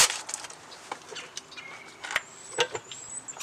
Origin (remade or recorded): recorded